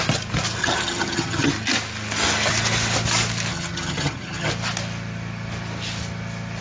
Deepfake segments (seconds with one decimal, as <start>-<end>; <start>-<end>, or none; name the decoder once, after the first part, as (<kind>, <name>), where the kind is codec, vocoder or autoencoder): 0.6-1.5 (vocoder, HiFi-GAN); 3.5-4.5